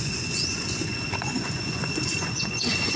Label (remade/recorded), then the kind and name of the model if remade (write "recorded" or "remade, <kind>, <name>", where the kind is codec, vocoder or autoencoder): remade, vocoder, Vocos